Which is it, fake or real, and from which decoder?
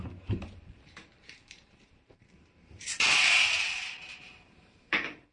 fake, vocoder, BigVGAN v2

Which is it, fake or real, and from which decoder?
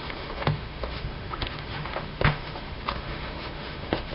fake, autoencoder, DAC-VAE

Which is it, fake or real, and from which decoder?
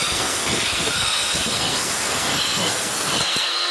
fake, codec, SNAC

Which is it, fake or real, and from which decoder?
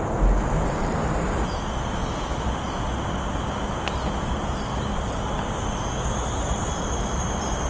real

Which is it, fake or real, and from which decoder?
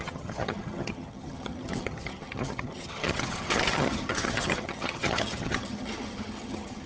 fake, vocoder, HiFi-GAN